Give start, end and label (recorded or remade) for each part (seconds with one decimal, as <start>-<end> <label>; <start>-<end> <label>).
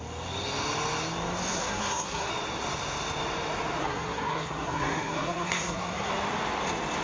0.0-1.5 recorded; 1.5-2.3 remade; 2.3-3.8 recorded; 3.8-6.1 remade; 6.1-7.0 recorded